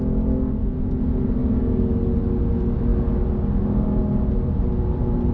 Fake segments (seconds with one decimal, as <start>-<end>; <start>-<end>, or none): none